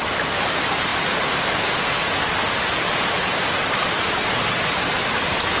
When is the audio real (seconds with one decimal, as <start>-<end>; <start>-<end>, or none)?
0.0-5.6